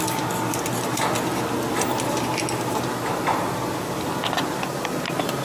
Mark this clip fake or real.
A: real